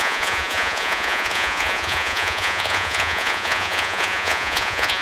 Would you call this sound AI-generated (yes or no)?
yes